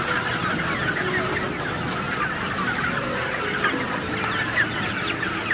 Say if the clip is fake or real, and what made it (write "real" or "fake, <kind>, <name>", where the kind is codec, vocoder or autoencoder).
real